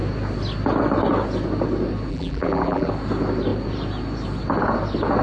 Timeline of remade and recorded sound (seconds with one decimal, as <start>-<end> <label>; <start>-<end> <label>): 0.0-2.1 recorded; 2.1-2.9 remade; 2.9-5.2 recorded